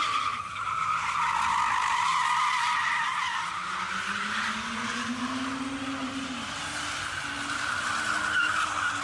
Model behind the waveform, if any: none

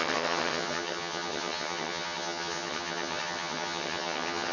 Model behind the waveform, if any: vocoder, HiFi-GAN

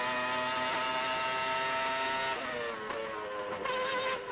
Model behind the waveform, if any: none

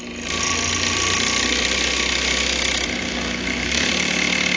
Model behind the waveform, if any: none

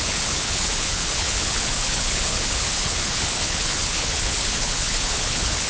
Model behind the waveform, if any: codec, HILCodec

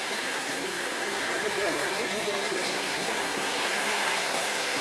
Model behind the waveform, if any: codec, SNAC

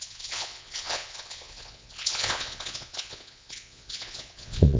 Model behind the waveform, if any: vocoder, Vocos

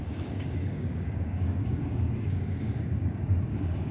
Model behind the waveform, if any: codec, DAC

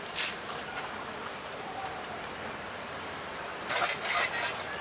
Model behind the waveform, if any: none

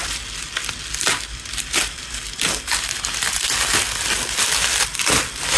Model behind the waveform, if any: none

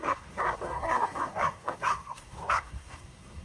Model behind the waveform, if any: codec, SNAC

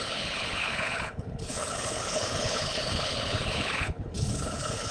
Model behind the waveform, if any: codec, HILCodec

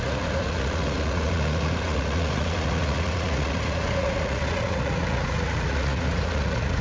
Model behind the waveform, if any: vocoder, Vocos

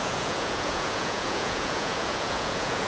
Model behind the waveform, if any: vocoder, Vocos